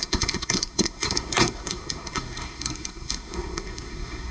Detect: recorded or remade remade